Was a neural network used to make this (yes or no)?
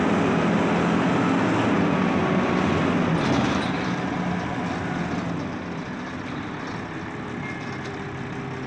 no